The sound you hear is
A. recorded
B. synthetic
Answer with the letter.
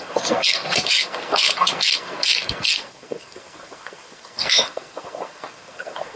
B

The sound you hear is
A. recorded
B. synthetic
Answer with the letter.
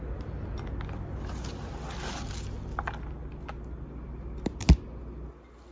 A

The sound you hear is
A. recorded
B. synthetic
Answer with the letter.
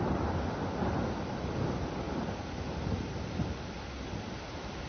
A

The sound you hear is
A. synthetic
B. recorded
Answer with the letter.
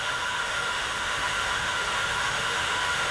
A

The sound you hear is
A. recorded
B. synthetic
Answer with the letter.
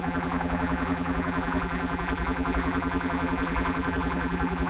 B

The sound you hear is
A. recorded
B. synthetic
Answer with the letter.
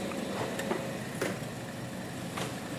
B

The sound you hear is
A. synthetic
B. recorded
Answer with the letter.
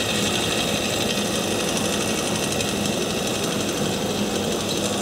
A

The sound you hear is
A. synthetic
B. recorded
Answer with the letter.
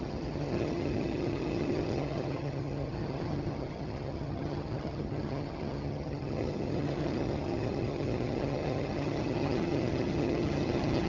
A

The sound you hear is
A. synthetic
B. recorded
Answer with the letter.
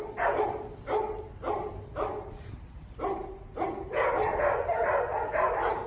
B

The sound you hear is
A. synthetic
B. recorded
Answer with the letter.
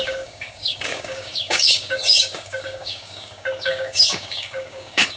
A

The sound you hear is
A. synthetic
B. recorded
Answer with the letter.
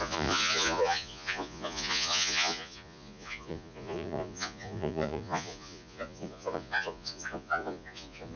A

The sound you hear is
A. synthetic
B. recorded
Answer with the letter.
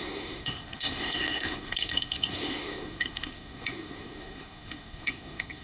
A